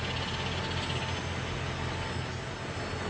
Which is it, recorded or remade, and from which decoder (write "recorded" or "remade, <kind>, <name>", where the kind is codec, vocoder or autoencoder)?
recorded